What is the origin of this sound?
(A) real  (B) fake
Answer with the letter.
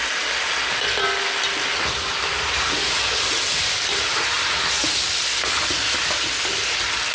A